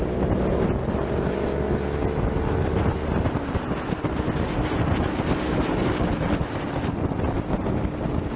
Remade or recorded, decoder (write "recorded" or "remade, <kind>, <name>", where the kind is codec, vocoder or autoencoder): recorded